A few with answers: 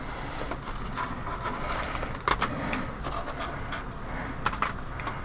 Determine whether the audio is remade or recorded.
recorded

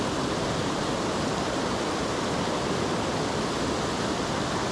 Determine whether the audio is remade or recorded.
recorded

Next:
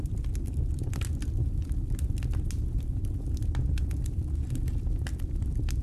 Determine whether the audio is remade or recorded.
recorded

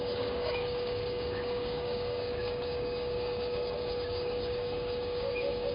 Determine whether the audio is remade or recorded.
remade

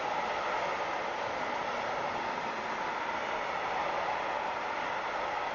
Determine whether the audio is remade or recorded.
recorded